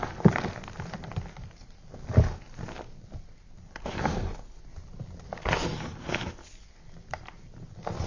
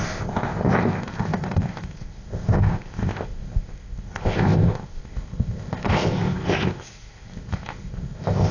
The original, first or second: first